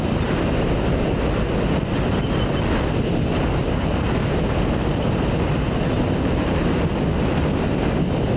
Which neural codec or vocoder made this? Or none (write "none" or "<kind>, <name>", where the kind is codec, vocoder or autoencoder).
none